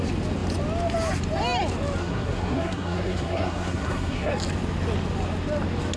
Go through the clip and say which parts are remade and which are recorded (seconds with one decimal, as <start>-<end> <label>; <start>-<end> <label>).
0.0-2.0 recorded; 2.0-4.3 remade; 4.3-6.0 recorded